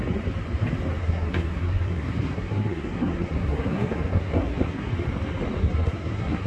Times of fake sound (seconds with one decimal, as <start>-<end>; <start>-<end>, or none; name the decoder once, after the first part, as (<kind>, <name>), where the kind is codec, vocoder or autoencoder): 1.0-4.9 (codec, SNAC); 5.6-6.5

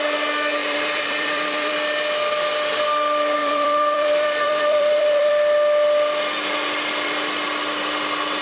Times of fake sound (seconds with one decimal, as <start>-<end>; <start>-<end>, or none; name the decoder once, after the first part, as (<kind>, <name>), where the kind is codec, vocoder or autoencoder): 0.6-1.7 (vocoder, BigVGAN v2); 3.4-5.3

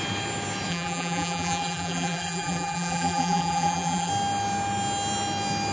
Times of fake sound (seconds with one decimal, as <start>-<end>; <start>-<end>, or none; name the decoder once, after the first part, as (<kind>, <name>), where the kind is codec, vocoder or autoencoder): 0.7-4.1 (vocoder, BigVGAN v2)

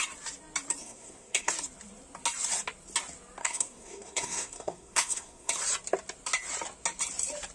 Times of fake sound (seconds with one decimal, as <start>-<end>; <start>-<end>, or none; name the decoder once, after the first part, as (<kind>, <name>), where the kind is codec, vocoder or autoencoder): 0.8-1.5 (codec, SNAC); 3.4-5.5